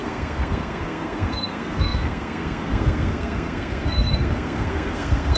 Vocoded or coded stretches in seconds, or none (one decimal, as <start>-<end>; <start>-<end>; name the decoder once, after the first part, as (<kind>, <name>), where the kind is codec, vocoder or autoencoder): 0.0-5.4 (codec, SNAC)

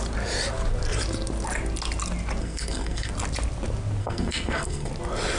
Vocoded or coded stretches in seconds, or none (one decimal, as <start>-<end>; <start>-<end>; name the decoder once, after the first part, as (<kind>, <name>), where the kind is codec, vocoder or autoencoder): 2.4-3.1 (codec, SNAC); 4.0-4.9

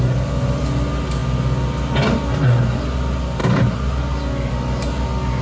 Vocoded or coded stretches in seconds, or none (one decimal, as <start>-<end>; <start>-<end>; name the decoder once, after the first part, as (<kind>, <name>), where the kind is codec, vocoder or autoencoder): none

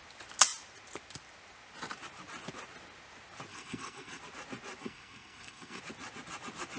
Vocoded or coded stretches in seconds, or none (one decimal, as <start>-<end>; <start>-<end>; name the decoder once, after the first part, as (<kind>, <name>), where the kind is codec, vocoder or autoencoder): 3.5-4.2 (codec, SNAC); 4.8-5.8